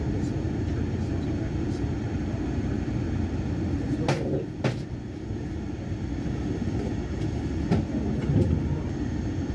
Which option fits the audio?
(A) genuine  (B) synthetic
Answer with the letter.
A